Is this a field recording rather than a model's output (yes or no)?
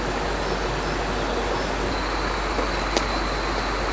yes